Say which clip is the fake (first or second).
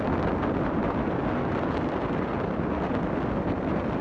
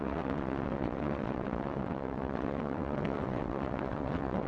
second